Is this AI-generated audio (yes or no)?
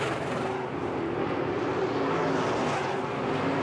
no